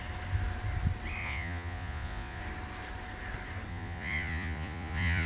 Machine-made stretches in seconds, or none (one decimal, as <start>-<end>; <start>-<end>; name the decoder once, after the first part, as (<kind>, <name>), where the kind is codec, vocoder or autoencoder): 1.2-2.4 (vocoder, Vocos); 3.7-5.3